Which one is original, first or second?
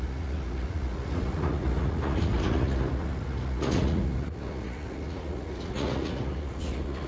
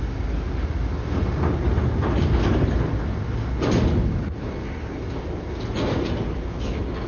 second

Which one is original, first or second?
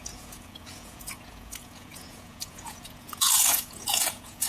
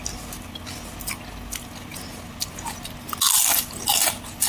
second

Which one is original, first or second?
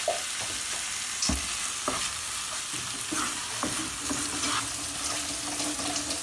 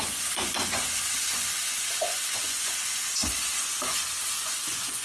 first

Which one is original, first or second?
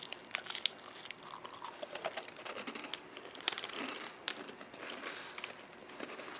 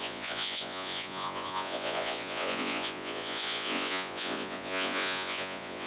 first